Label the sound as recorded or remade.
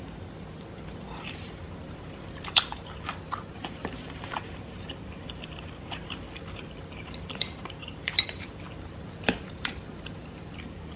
remade